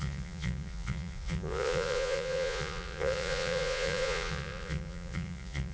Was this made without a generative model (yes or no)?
no